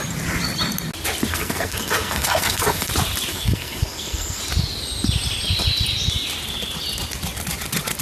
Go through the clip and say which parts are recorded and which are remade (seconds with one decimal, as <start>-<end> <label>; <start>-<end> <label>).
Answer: 0.0-1.3 recorded; 1.3-2.9 remade; 2.9-3.3 recorded; 3.3-4.4 remade; 4.4-8.0 recorded